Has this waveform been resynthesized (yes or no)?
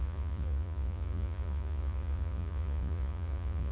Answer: yes